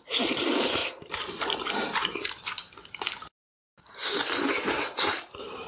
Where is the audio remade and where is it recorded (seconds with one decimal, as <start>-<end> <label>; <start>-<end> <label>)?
0.0-2.6 remade; 2.6-4.4 recorded; 4.4-5.7 remade